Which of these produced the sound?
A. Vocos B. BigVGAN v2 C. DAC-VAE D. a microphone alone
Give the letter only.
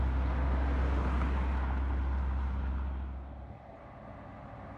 D